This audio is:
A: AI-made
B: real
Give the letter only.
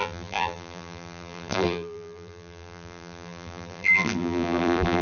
A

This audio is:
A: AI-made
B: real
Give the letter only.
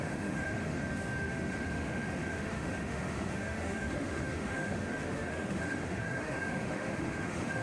A